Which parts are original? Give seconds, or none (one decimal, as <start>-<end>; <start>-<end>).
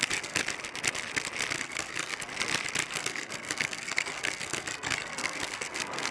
0.4-1.6; 2.3-2.9